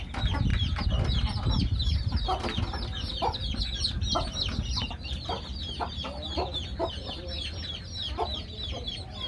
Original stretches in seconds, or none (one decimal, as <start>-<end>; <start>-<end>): 0.0-9.3